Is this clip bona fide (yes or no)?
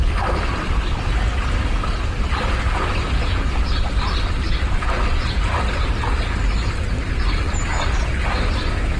yes